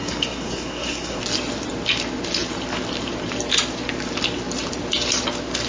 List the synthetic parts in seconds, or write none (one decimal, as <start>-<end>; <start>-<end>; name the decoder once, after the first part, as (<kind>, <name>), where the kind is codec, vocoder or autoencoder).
0.0-1.2 (codec, SNAC)